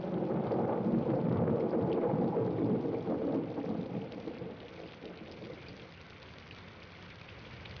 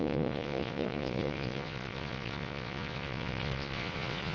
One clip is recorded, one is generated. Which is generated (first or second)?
second